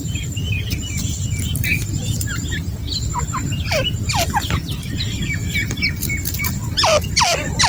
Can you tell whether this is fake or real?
real